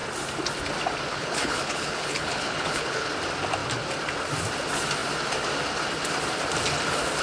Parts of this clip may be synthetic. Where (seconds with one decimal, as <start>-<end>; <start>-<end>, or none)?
1.1-3.1